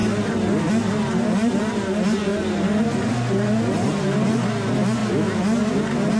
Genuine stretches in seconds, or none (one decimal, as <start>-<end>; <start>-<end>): 0.0-6.2